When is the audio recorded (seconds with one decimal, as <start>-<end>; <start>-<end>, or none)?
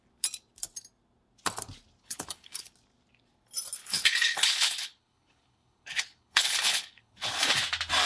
0.0-2.0; 2.7-3.8; 7.6-8.1